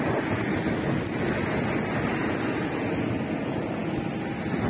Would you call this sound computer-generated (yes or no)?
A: no